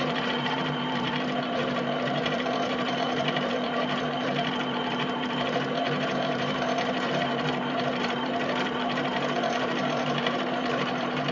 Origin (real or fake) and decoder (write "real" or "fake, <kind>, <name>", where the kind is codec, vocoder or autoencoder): fake, vocoder, BigVGAN v2